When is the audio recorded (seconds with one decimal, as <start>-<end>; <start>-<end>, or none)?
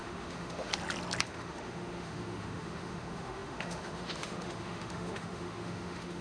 0.7-1.2